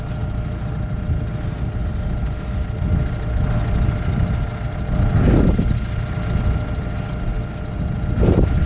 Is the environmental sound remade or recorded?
recorded